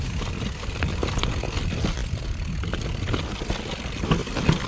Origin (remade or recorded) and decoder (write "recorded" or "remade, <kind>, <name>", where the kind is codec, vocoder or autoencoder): recorded